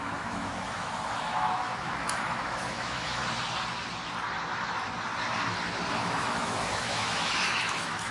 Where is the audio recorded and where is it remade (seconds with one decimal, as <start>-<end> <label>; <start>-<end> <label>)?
0.0-3.2 remade; 3.2-5.9 recorded; 5.9-8.1 remade